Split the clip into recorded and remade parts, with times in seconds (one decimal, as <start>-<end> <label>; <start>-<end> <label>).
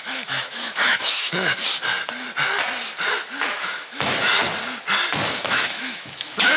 0.0-1.6 remade; 1.6-3.1 recorded; 3.1-4.4 remade; 4.4-5.3 recorded; 5.3-6.6 remade